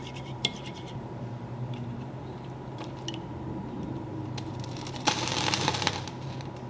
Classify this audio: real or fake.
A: fake